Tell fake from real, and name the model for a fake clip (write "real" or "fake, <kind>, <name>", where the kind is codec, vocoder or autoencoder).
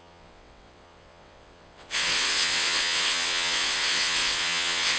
fake, vocoder, WaveNeXt